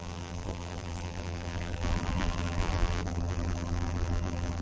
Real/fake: fake